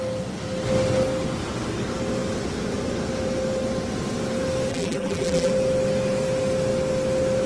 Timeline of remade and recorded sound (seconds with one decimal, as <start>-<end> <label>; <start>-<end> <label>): 0.0-4.7 recorded; 4.7-5.5 remade; 5.5-7.5 recorded